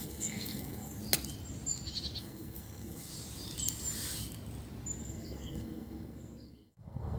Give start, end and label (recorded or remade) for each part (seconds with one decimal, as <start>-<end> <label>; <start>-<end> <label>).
0.0-1.0 remade; 1.0-2.2 recorded; 2.2-3.1 remade; 3.1-5.0 recorded; 5.0-7.2 remade